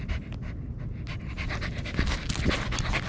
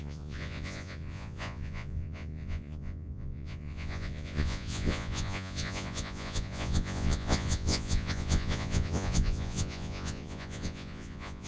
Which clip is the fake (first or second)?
second